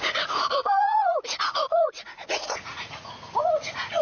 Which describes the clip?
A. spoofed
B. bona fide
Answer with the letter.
A